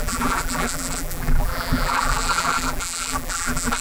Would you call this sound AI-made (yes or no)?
yes